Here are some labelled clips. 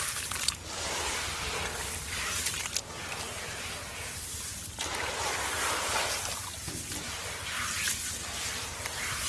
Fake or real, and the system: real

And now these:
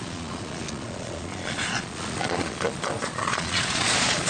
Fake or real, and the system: fake, vocoder, Vocos